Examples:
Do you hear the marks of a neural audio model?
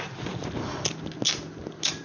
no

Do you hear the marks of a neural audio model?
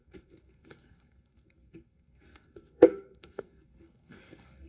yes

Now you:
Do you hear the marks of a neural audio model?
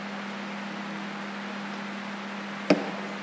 no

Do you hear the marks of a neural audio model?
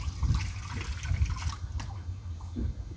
no